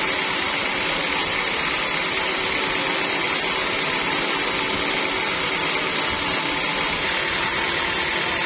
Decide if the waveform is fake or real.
real